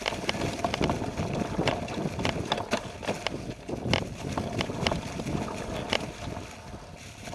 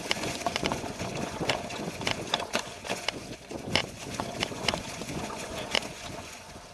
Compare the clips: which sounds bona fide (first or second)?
first